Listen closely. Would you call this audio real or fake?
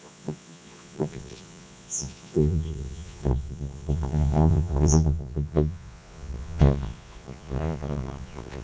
fake